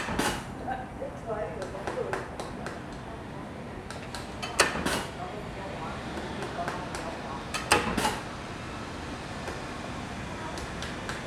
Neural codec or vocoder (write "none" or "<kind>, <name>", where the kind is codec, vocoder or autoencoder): none